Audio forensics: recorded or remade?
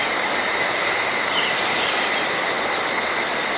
recorded